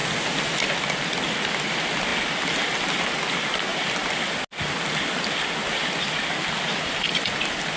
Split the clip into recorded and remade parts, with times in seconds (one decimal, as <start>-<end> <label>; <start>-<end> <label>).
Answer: 0.0-7.8 recorded